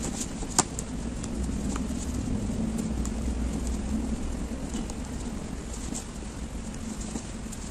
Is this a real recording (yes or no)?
yes